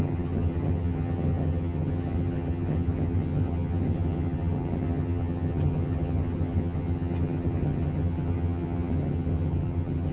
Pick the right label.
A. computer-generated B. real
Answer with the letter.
A